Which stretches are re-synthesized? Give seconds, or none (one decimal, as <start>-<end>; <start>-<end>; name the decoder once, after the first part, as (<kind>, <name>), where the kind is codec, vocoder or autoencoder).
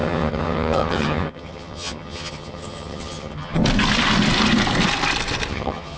0.0-3.6 (vocoder, HiFi-GAN); 5.5-6.0